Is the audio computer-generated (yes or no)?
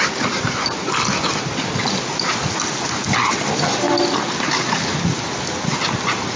no